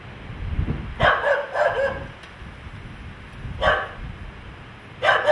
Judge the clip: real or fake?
real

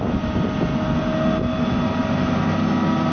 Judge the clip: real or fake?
real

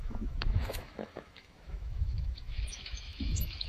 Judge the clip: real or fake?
fake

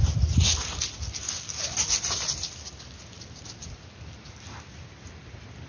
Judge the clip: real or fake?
real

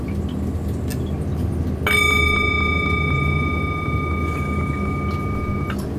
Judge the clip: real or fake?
real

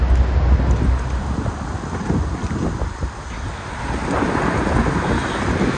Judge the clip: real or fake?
real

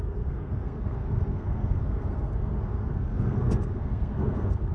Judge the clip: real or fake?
fake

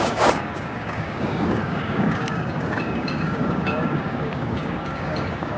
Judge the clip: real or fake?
fake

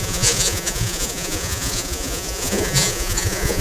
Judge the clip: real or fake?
fake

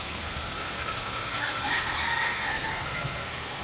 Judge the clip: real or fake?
fake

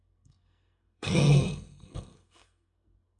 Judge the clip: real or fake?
fake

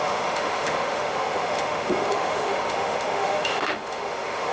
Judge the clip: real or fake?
fake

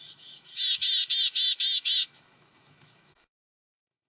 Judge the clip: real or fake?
fake